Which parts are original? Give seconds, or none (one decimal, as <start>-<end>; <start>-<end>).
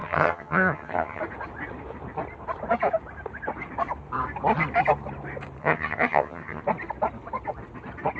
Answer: 1.2-5.6; 6.6-8.2